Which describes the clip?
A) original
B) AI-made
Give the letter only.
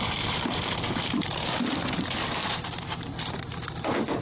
B